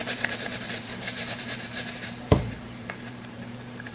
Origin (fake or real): fake